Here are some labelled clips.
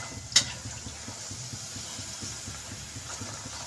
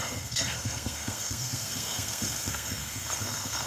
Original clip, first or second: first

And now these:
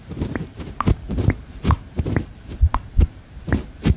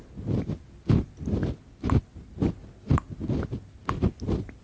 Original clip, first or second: second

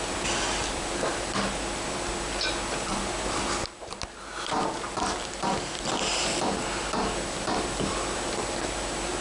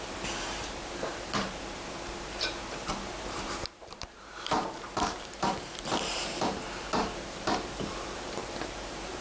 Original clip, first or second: first